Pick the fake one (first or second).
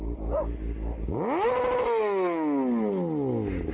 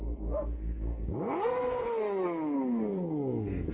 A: second